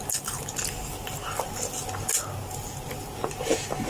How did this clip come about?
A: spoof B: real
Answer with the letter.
B